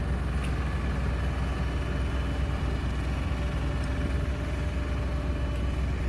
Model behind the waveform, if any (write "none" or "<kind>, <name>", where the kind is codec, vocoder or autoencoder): none